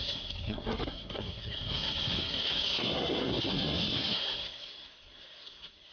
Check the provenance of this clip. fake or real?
fake